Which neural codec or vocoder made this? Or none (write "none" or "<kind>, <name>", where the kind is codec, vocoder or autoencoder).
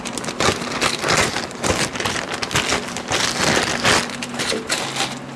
none